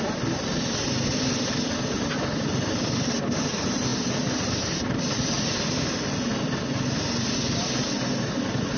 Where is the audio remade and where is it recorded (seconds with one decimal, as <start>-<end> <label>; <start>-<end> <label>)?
0.0-8.8 recorded

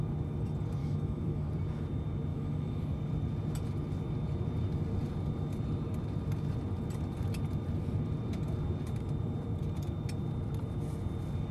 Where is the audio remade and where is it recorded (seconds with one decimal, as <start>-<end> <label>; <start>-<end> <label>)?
0.0-0.8 recorded; 0.8-1.5 remade; 1.5-2.3 recorded; 2.3-2.8 remade; 2.8-11.5 recorded

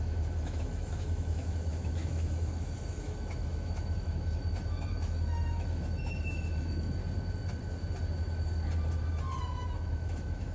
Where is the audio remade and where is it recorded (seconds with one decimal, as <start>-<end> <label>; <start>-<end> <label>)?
0.0-7.0 remade; 7.0-9.4 recorded; 9.4-10.5 remade

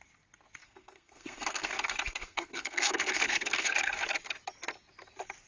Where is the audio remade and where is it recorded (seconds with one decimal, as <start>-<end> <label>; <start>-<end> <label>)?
0.0-0.6 recorded; 0.6-3.9 remade; 3.9-5.5 recorded

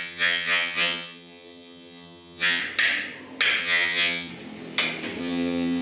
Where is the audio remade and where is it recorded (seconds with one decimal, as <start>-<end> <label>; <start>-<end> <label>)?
0.0-2.6 remade; 2.6-3.6 recorded; 3.6-4.3 remade; 4.3-5.2 recorded; 5.2-5.8 remade

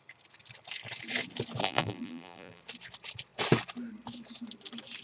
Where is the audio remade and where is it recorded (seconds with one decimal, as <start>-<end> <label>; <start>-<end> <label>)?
0.0-1.6 recorded; 1.6-2.6 remade; 2.6-5.0 recorded

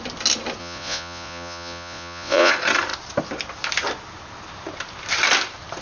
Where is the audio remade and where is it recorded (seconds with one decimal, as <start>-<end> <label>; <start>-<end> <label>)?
0.0-0.6 recorded; 0.6-2.5 remade; 2.5-5.8 recorded

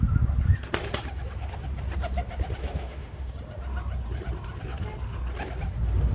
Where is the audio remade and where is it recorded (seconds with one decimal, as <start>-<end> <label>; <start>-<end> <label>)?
0.0-2.6 recorded; 2.6-3.3 remade; 3.3-6.1 recorded